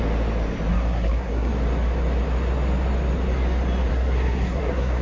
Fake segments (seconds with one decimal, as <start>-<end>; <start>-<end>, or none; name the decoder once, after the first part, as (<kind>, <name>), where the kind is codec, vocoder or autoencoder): 0.7-1.5 (codec, SNAC); 3.9-5.0